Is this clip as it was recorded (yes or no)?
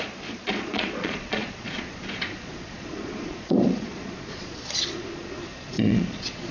no